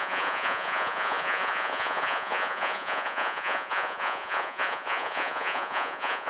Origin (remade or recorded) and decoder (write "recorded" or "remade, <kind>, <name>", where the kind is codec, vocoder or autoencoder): remade, vocoder, Vocos